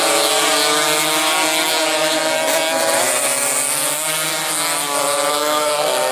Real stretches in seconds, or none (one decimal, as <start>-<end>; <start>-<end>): 0.0-5.3